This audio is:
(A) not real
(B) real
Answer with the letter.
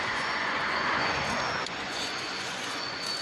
A